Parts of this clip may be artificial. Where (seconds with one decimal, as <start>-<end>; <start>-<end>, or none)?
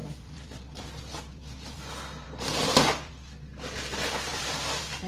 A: 0.0-0.6; 1.3-3.1; 4.3-5.1